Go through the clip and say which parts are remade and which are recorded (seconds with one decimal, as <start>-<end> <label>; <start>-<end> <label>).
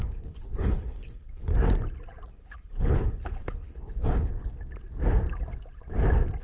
0.0-1.5 remade; 1.5-2.3 recorded; 2.3-4.3 remade; 4.3-6.4 recorded